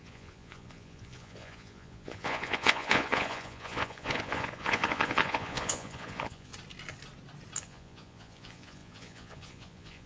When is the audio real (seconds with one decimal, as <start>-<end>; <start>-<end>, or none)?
6.5-7.6